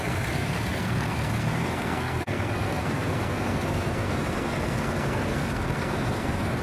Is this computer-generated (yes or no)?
yes